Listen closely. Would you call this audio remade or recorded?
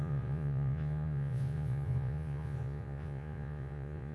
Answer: remade